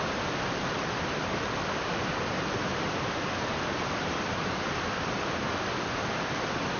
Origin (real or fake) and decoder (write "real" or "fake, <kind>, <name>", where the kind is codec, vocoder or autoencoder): real